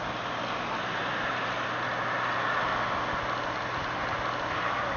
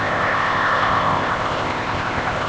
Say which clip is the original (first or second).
first